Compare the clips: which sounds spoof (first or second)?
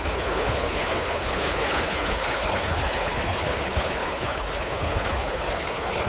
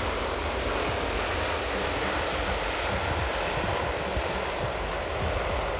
first